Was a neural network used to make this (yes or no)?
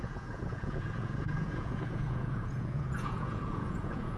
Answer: yes